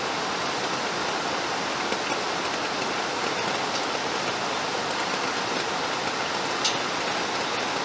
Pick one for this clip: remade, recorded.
recorded